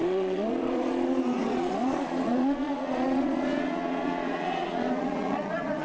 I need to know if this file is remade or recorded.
remade